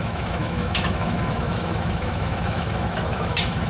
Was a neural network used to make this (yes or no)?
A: yes